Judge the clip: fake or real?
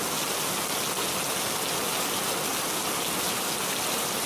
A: real